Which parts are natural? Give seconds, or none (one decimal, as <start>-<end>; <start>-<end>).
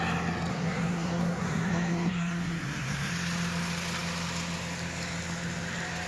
0.0-0.5; 3.1-6.1